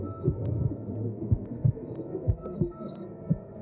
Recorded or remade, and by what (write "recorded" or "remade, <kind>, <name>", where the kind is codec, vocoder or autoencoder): remade, codec, SNAC